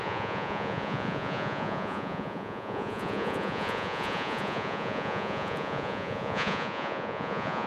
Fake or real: fake